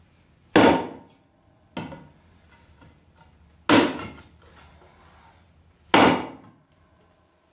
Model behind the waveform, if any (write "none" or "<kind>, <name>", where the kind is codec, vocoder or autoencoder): none